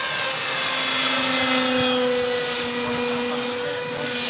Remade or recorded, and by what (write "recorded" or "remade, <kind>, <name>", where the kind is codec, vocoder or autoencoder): recorded